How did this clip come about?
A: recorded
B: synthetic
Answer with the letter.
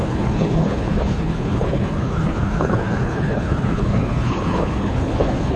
B